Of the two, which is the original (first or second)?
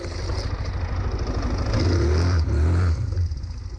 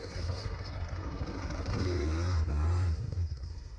first